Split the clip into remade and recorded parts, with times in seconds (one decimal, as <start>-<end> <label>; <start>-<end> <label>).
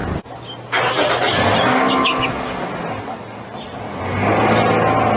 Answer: 0.0-1.7 recorded; 1.7-2.3 remade; 2.3-5.2 recorded